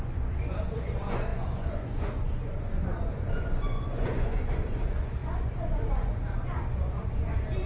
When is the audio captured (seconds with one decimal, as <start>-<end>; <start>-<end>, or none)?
none